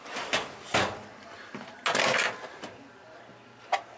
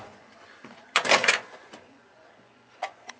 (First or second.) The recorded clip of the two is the first